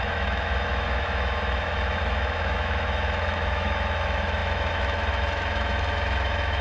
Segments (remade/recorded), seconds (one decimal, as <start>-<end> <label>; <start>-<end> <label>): 0.0-6.6 remade